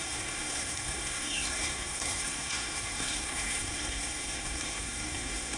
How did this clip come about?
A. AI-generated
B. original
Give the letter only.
A